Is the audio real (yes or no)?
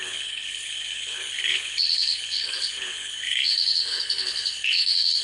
no